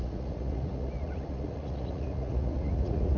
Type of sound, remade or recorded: remade